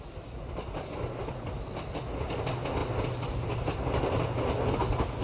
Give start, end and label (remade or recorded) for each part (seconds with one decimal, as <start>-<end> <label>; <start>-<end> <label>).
0.0-5.2 recorded